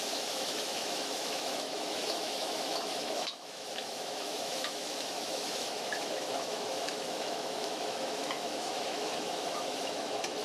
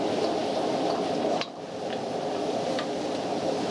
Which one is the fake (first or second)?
first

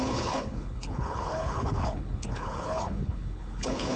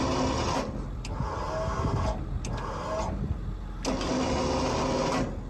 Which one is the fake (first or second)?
first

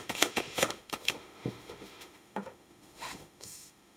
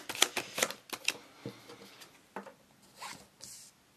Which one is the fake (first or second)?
first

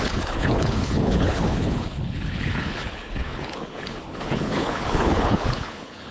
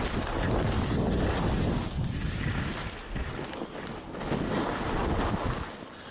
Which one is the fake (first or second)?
first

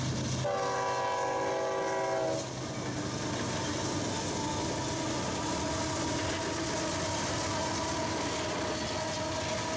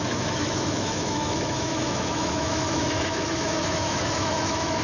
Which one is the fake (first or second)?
second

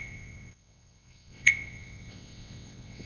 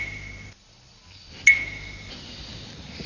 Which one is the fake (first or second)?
first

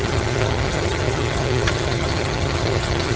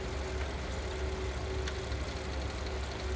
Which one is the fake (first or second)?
first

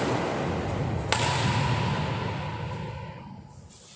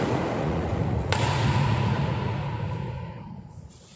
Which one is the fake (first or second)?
second